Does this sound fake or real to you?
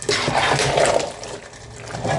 real